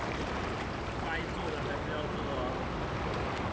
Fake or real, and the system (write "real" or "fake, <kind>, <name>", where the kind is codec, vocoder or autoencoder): real